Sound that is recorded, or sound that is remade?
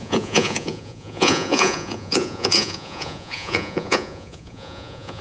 remade